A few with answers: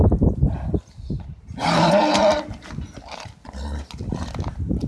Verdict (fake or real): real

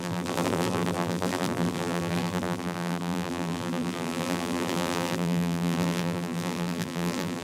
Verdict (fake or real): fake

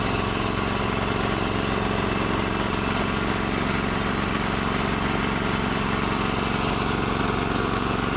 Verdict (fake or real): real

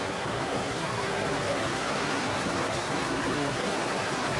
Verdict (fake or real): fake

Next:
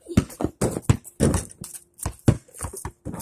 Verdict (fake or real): real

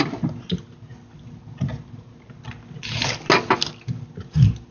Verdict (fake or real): real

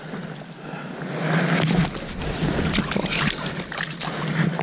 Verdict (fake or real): real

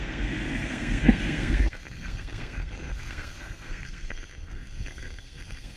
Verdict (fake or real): fake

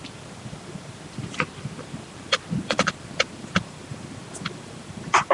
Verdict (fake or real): fake